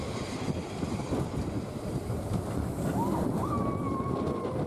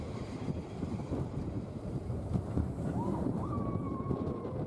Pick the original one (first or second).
first